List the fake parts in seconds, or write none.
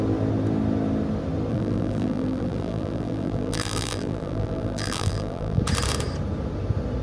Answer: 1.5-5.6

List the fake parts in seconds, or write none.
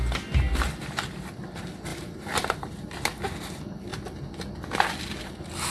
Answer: 1.9-3.0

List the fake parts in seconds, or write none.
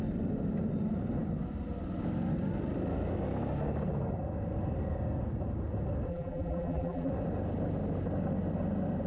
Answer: 6.1-7.1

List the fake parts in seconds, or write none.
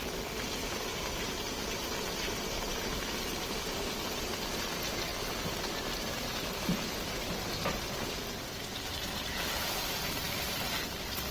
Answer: 2.7-4.6; 9.0-11.3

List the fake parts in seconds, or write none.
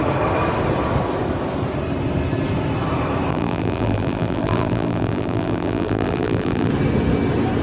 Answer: 3.3-6.7